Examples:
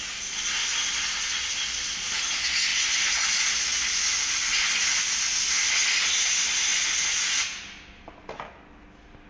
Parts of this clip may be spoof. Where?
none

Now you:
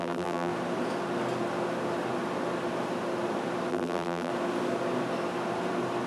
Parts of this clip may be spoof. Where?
0.0-0.5 (vocoder, BigVGAN v2); 3.7-4.3

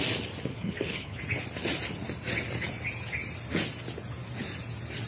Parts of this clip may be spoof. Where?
0.5-1.2 (codec, HILCodec)